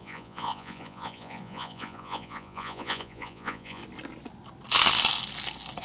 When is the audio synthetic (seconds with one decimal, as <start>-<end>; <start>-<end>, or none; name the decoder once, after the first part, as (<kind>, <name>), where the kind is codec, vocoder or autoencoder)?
0.0-3.8 (vocoder, Vocos)